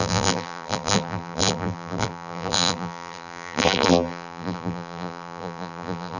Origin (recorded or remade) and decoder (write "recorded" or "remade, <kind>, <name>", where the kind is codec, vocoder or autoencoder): remade, vocoder, BigVGAN v2